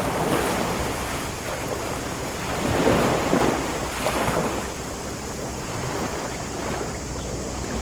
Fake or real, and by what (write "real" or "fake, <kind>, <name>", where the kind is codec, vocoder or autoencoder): real